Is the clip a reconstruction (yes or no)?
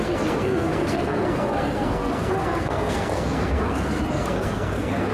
yes